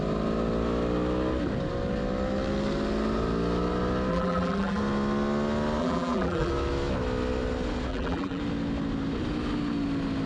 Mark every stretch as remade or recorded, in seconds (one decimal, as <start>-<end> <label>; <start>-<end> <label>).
0.0-4.1 recorded; 4.1-4.8 remade; 4.8-5.8 recorded; 5.8-6.5 remade; 6.5-7.9 recorded; 7.9-8.4 remade; 8.4-10.3 recorded